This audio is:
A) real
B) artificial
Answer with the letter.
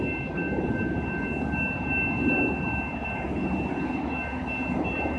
A